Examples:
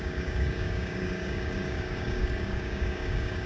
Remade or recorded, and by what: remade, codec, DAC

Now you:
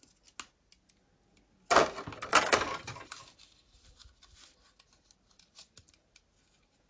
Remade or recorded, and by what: recorded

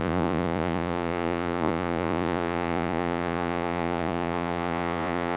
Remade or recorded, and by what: remade, vocoder, Vocos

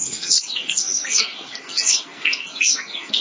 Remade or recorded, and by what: remade, codec, SNAC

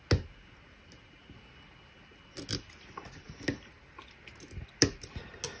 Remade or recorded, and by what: recorded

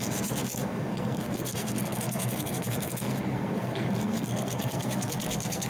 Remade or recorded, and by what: remade, codec, SNAC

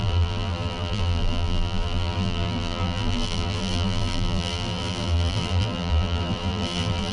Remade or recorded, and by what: remade, vocoder, BigVGAN v2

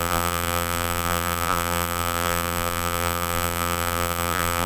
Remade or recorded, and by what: remade, vocoder, BigVGAN v2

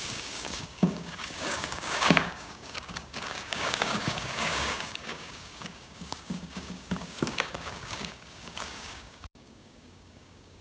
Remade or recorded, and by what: remade, codec, DAC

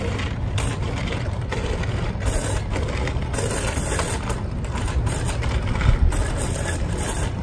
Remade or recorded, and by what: recorded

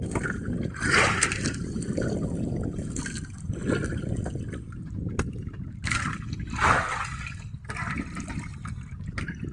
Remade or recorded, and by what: recorded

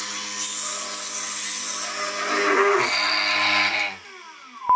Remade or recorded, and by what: recorded